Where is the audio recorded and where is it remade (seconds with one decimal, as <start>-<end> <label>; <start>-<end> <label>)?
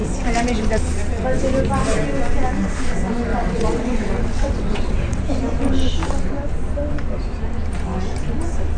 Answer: 0.0-3.3 recorded; 3.3-5.2 remade; 5.2-8.8 recorded